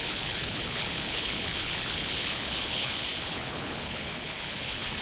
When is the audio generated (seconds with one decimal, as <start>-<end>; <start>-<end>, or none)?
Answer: 0.0-5.0